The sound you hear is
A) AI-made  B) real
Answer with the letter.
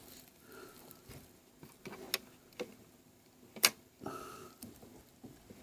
B